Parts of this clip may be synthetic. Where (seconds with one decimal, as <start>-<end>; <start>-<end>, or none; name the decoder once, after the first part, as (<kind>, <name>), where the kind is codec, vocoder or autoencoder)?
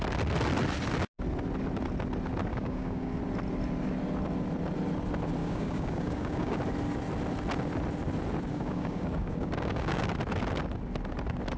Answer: 2.5-3.2 (codec, DAC); 5.4-6.6; 8.5-10.1